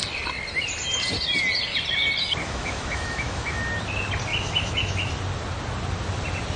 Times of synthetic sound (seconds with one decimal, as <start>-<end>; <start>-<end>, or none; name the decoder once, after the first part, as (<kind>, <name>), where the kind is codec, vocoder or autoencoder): 2.4-3.6 (autoencoder, DAC-VAE); 4.3-5.1